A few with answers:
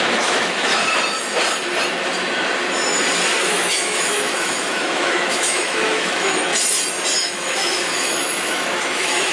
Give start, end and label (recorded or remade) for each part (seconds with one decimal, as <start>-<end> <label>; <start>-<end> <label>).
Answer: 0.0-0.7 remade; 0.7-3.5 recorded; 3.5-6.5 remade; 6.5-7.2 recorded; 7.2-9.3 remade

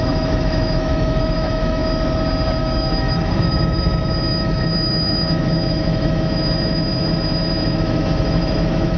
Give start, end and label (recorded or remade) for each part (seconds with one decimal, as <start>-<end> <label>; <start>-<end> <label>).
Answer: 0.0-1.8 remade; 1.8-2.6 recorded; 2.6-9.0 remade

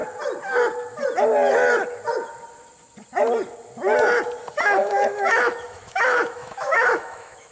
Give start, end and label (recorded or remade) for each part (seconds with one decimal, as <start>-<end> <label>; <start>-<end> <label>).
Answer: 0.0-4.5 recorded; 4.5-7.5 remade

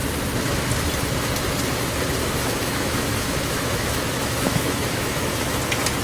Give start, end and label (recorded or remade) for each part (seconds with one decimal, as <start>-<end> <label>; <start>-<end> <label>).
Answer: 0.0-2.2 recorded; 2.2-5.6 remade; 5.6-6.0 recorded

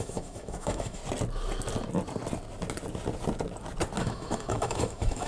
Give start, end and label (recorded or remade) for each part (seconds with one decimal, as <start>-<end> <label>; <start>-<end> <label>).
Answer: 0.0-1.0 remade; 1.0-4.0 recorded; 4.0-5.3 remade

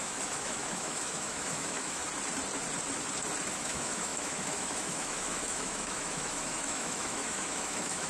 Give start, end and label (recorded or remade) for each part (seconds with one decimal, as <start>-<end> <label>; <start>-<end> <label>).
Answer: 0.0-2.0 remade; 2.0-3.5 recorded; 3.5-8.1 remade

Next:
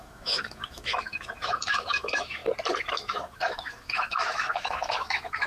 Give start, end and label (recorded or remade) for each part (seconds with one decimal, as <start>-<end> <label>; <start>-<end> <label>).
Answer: 0.0-2.4 remade; 2.4-2.9 recorded; 2.9-5.5 remade